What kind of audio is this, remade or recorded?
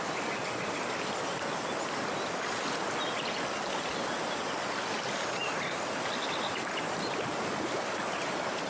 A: recorded